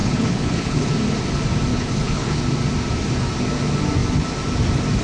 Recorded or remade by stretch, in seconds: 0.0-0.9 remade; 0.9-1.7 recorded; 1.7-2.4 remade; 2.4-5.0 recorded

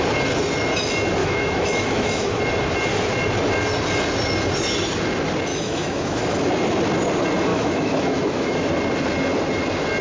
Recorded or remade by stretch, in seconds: 0.0-1.2 recorded; 1.2-2.4 remade; 2.4-5.5 recorded; 5.5-6.2 remade; 6.2-7.5 recorded; 7.5-8.7 remade; 8.7-10.0 recorded

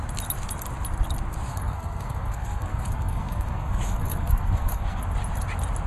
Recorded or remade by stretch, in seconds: 0.0-1.5 recorded; 1.5-5.0 remade; 5.0-5.9 recorded

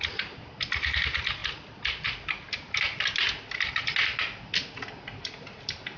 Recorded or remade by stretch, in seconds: 0.0-6.0 recorded

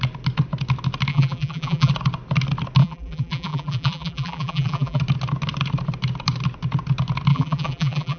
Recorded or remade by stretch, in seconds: 0.0-1.1 recorded; 1.1-1.9 remade; 1.9-2.8 recorded; 2.8-5.0 remade; 5.0-7.3 recorded; 7.3-8.2 remade